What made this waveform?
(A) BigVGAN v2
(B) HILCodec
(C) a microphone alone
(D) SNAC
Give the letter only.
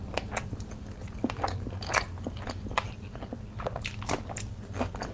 C